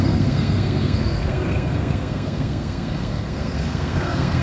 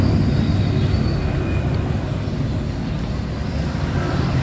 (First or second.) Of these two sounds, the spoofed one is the first